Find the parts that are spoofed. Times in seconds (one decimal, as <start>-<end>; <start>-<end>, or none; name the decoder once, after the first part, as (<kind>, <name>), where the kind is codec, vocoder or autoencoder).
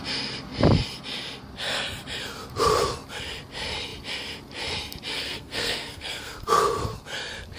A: 5.1-6.6 (codec, SNAC)